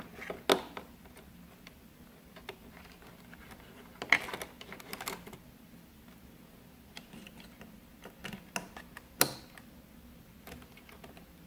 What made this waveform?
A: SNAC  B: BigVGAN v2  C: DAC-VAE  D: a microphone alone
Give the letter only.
D